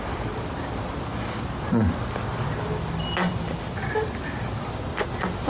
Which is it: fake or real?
real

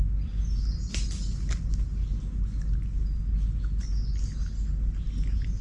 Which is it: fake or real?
real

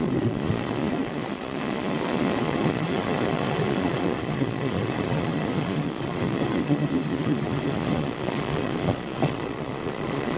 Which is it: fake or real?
fake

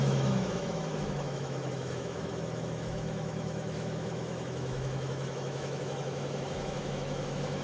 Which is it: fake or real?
fake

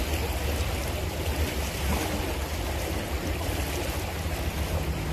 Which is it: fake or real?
real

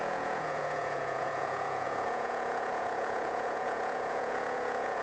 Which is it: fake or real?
fake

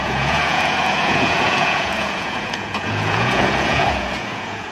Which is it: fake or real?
fake